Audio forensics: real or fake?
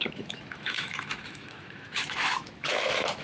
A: fake